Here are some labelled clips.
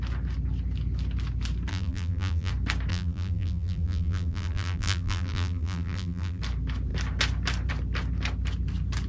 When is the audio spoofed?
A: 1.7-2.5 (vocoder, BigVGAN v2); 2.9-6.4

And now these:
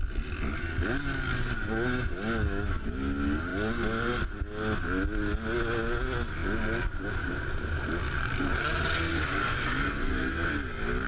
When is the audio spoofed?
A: none